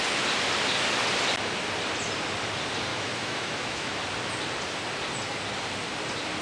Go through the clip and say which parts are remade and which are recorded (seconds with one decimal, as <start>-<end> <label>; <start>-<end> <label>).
0.0-2.9 recorded; 2.9-4.0 remade; 4.0-6.4 recorded